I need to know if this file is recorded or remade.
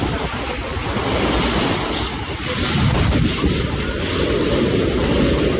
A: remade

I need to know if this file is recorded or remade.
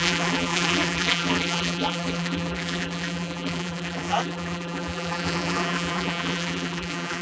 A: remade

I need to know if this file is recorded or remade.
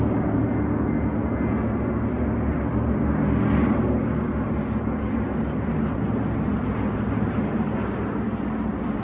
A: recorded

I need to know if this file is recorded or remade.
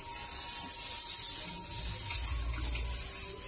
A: recorded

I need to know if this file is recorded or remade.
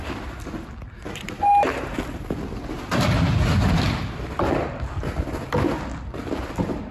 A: recorded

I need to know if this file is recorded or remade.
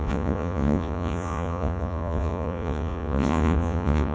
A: remade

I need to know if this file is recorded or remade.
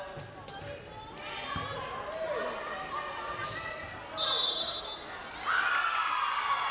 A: recorded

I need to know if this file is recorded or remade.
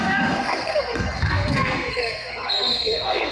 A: remade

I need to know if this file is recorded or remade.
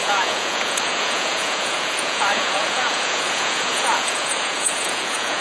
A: remade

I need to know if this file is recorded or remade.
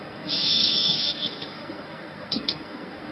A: remade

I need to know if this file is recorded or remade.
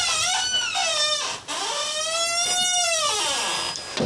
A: recorded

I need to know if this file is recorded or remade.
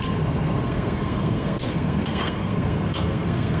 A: remade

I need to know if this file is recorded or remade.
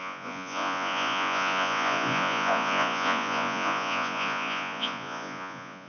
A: remade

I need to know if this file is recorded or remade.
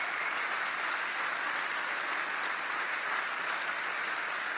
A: recorded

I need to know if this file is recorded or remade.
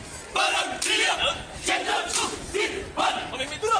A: recorded